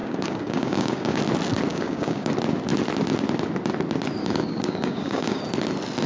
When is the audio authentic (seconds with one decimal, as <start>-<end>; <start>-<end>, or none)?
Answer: 1.2-1.7; 2.3-4.2; 5.4-6.1